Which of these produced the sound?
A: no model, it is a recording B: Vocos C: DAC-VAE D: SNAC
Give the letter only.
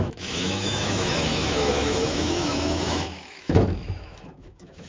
C